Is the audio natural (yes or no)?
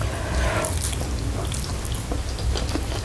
yes